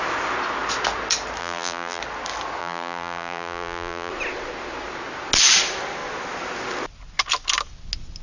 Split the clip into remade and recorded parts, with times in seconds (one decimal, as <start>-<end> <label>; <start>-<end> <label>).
0.0-1.4 recorded; 1.4-2.0 remade; 2.0-2.6 recorded; 2.6-4.1 remade; 4.1-8.2 recorded